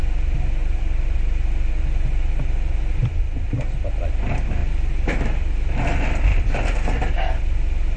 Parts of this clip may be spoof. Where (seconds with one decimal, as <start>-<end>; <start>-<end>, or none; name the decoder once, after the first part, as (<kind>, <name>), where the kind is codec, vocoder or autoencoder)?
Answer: 0.6-1.7 (vocoder, BigVGAN v2); 4.6-5.2; 6.3-7.4

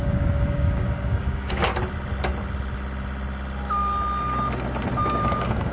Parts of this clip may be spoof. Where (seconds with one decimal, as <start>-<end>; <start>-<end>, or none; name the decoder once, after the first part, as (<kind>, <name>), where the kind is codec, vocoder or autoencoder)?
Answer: 0.0-1.7 (codec, DAC); 5.1-5.7